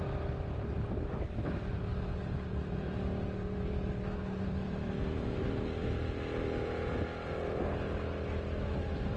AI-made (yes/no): no